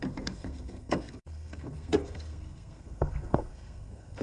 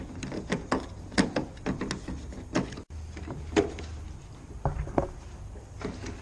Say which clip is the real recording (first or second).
second